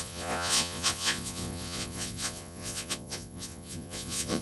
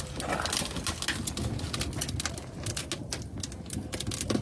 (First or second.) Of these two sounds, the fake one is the first